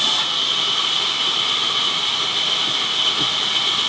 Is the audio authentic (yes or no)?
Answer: yes